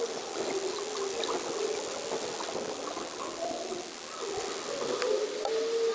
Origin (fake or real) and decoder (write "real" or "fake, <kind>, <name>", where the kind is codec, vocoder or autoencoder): real